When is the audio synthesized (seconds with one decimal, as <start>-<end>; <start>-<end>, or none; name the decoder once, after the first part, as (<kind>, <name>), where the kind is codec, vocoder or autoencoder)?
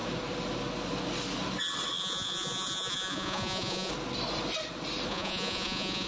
2.0-3.9 (vocoder, Vocos); 5.1-6.1